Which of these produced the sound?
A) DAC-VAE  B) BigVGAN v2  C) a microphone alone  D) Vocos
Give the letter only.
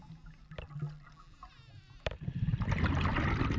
C